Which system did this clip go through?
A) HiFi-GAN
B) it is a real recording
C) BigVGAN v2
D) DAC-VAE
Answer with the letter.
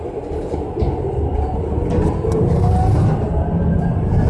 B